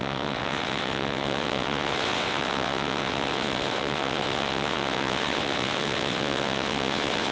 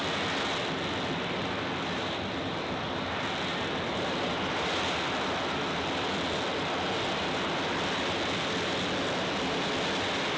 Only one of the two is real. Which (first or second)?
second